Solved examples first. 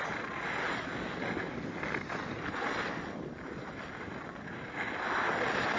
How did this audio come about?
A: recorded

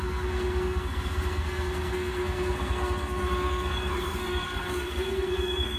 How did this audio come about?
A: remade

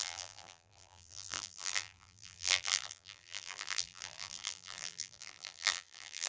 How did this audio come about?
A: remade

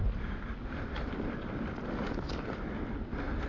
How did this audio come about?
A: recorded